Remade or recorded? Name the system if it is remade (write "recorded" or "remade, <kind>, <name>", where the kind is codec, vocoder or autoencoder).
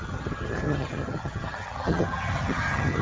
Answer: remade, vocoder, HiFi-GAN